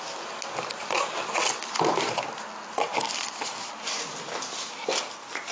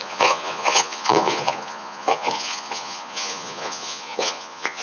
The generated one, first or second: second